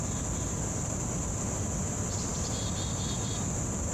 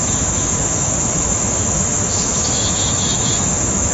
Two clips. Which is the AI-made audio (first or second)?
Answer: second